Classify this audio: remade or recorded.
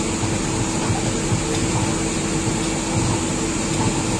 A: recorded